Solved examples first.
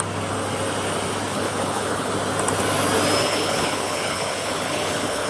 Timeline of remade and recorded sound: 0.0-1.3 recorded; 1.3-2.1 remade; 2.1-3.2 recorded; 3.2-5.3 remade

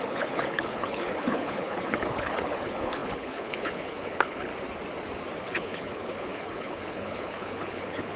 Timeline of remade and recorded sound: 0.0-4.5 remade; 4.5-5.4 recorded; 5.4-8.2 remade

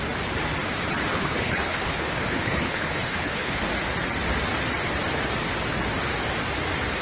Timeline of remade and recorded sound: 0.0-1.1 recorded; 1.1-3.6 remade; 3.6-7.0 recorded